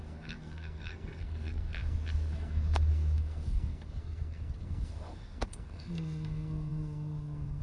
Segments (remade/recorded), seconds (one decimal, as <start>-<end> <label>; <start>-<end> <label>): 0.0-7.6 remade